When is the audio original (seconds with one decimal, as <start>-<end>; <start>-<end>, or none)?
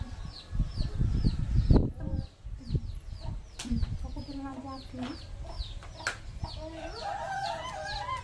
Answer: 0.0-8.2